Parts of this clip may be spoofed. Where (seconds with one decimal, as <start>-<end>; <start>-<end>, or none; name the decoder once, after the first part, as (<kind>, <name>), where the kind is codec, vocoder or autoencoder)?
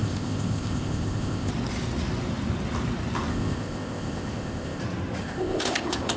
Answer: 0.0-1.5 (codec, ZipCodec); 3.3-4.8; 5.2-6.2